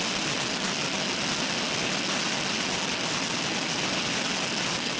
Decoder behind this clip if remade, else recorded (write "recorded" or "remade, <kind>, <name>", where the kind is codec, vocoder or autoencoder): recorded